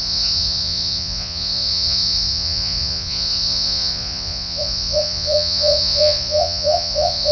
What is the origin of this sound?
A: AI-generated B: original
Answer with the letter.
A